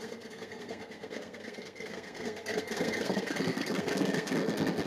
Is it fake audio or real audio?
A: fake